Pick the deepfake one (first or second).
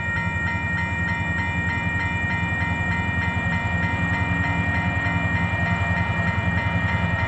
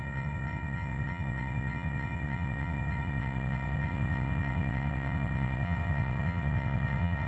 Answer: second